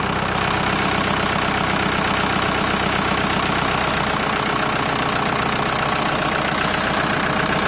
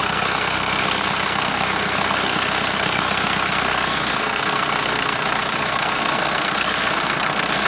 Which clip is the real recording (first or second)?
first